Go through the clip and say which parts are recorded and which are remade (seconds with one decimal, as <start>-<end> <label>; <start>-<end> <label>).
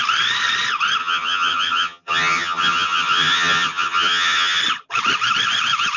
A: 0.0-1.0 recorded; 1.0-4.6 remade; 4.6-6.0 recorded